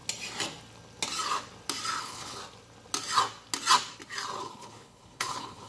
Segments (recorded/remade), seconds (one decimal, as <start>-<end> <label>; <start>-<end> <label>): 0.0-2.0 recorded; 2.0-2.4 remade; 2.4-4.4 recorded; 4.4-5.7 remade